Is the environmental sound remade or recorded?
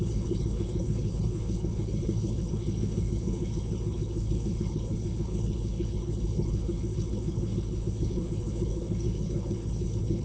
remade